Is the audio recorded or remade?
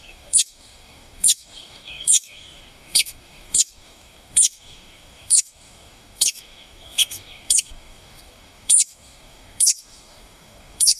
remade